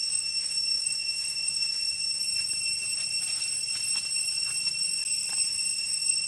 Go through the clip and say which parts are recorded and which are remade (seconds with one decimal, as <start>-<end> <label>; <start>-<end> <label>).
0.0-2.2 remade; 2.2-5.5 recorded; 5.5-6.3 remade